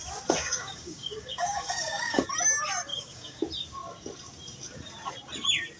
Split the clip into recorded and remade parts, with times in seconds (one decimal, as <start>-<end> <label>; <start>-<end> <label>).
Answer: 0.0-0.4 recorded; 0.4-2.2 remade; 2.2-2.9 recorded; 2.9-3.4 remade; 3.4-5.8 recorded